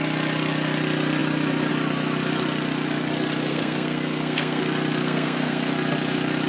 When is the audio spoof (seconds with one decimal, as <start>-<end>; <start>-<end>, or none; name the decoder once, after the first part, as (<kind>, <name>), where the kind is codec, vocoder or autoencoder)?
3.5-4.6 (codec, SNAC); 5.0-5.7